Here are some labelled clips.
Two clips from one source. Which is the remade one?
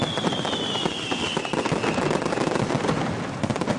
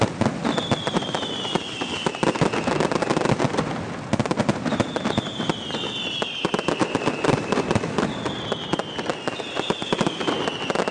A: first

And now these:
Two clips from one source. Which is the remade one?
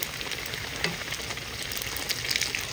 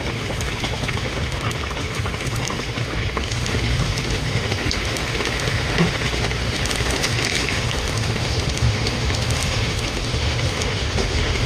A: second